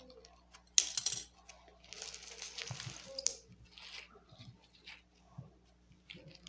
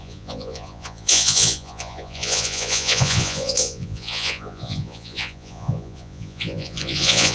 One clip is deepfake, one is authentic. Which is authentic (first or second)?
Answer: first